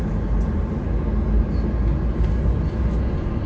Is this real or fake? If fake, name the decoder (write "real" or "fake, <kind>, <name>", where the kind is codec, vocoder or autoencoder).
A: real